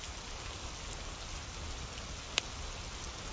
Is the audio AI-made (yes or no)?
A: no